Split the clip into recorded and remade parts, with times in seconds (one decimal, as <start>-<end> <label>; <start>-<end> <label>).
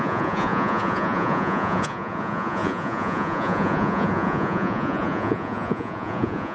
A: 0.0-6.5 remade